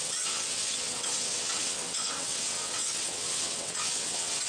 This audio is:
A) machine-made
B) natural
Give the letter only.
A